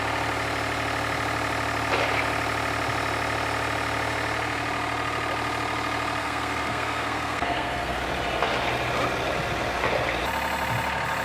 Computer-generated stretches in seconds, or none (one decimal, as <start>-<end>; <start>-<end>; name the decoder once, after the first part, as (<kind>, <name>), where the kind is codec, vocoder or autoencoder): 6.2-8.0 (codec, SNAC)